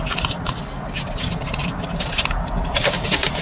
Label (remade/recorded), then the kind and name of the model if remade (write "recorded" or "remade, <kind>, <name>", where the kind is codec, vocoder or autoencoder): recorded